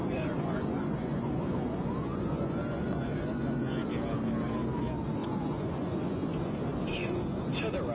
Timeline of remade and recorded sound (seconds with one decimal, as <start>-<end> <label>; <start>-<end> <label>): 0.0-3.9 remade; 3.9-5.2 recorded; 5.2-7.5 remade; 7.5-7.9 recorded